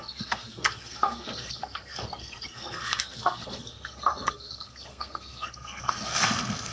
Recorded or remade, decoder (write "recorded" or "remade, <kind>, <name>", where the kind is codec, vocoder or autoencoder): remade, codec, SNAC